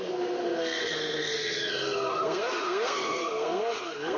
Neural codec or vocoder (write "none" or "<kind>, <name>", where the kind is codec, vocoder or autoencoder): codec, SNAC